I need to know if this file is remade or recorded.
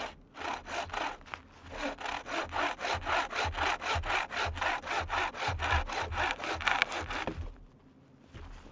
recorded